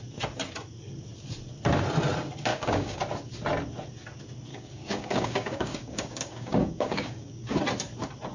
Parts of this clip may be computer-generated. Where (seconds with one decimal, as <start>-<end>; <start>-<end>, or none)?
2.5-3.0; 4.5-7.6